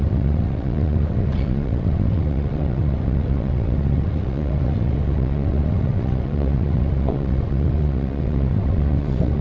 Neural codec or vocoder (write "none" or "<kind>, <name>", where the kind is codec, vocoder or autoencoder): vocoder, WaveNeXt